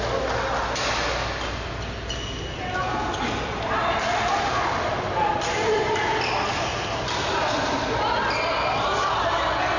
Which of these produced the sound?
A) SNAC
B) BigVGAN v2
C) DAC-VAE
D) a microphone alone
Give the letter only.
D